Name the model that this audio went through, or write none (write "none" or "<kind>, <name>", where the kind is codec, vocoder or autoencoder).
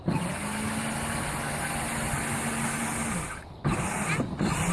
none